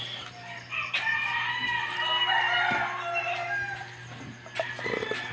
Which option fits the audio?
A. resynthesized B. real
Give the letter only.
B